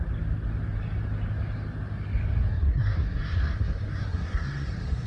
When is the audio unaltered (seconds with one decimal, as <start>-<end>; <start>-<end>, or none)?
0.0-2.5